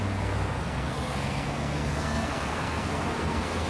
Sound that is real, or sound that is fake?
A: fake